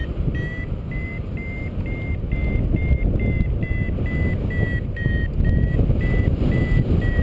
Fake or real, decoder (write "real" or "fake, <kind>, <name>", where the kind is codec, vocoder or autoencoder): real